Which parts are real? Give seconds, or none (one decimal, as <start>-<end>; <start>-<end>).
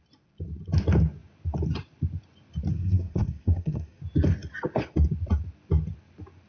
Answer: 0.0-2.7; 4.0-6.5